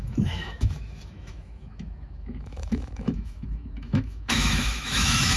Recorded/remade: remade